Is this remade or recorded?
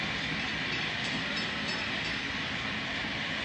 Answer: recorded